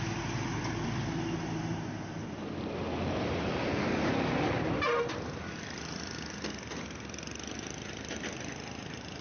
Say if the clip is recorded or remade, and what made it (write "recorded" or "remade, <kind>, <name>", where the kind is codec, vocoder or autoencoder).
recorded